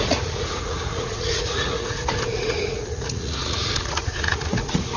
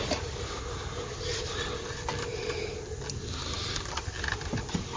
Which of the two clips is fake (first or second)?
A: first